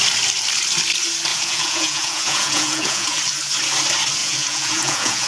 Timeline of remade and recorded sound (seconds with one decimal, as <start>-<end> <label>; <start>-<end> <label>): 0.0-1.3 recorded; 1.3-3.2 remade; 3.2-4.2 recorded; 4.2-5.3 remade